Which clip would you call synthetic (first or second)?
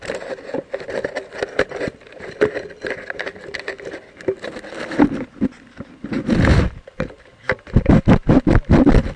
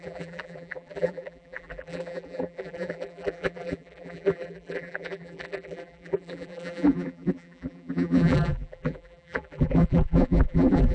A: second